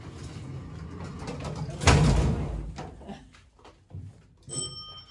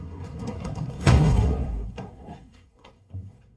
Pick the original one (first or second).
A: first